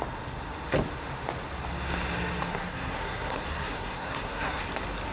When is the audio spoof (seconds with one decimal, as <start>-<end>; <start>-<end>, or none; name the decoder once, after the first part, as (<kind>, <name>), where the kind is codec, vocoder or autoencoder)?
2.5-4.6 (codec, SNAC)